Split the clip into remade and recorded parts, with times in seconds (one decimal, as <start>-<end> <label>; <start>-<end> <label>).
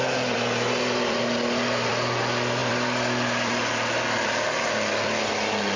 0.0-5.8 recorded